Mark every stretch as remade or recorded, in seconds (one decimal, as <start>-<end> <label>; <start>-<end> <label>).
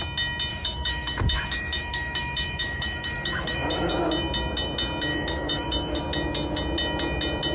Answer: 0.0-0.5 recorded; 0.5-3.9 remade; 3.9-5.1 recorded; 5.1-6.0 remade; 6.0-7.5 recorded